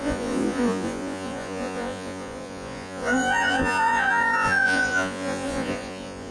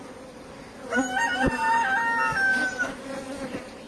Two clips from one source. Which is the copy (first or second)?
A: first